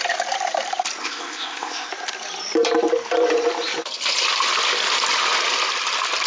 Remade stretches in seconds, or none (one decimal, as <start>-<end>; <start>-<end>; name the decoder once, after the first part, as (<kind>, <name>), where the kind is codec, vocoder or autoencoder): 1.0-1.9 (codec, ZipCodec)